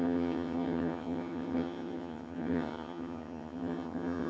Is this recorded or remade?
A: remade